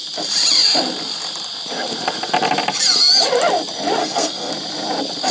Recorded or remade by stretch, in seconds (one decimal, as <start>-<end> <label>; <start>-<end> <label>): 0.0-4.0 recorded; 4.0-4.5 remade; 4.5-5.3 recorded